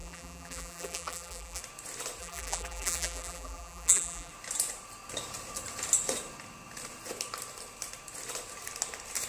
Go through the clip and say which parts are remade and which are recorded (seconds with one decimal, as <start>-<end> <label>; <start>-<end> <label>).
0.0-1.6 remade; 1.6-2.2 recorded; 2.2-4.3 remade; 4.3-9.3 recorded